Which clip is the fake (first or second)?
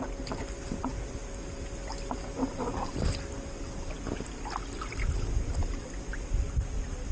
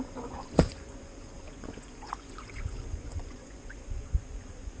second